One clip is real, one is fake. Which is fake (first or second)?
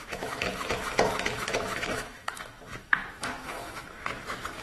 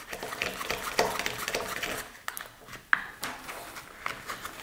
first